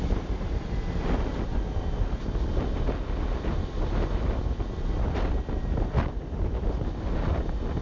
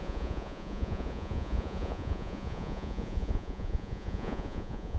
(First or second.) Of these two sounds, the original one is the first